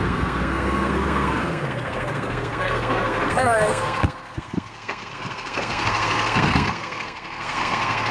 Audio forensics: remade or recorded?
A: remade